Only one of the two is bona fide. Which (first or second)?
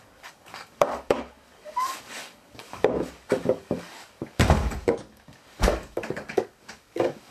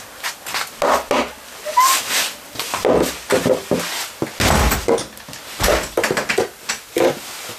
second